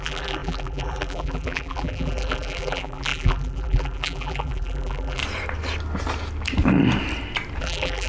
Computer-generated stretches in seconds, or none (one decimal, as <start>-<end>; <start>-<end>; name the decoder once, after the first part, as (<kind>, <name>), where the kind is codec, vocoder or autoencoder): 0.0-5.2 (vocoder, BigVGAN v2); 7.6-8.1